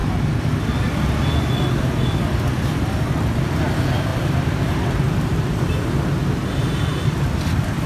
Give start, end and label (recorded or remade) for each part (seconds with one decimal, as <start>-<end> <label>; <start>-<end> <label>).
0.0-4.1 recorded; 4.1-5.8 remade; 5.8-6.9 recorded; 6.9-7.9 remade